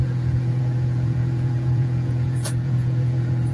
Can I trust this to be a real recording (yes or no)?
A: no